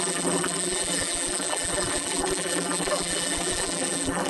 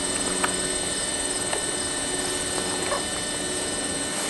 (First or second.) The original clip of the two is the second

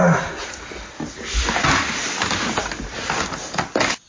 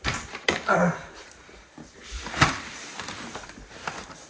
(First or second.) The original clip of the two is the first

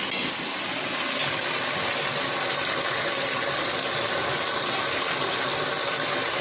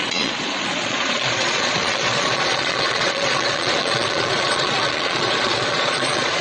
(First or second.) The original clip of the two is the first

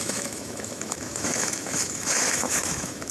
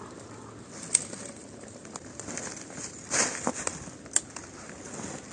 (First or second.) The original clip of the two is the second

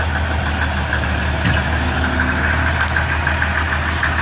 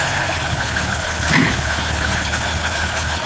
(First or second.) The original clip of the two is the first